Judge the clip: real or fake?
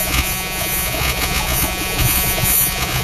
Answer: fake